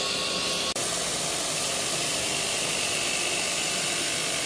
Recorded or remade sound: recorded